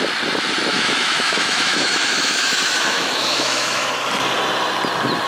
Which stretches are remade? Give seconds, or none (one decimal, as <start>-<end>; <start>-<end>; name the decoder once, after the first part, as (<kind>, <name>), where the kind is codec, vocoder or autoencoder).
0.7-3.9 (autoencoder, DAC-VAE)